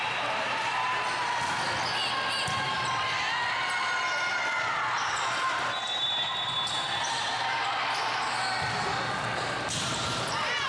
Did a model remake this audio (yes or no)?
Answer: no